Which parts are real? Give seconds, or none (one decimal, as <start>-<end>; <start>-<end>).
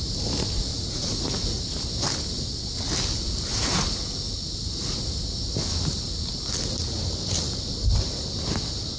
0.0-0.7; 1.6-3.6; 4.2-9.0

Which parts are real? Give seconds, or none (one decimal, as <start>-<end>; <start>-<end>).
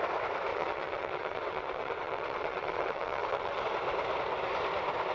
0.0-0.5; 3.6-5.1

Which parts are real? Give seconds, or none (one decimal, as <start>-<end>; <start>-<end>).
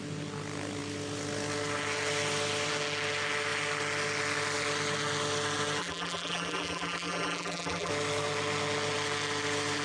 0.0-5.8; 7.9-9.8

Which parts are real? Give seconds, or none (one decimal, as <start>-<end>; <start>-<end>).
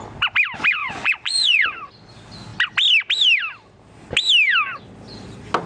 0.0-0.8; 1.9-5.7